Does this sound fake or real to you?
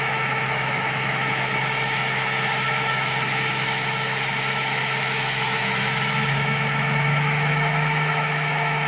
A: fake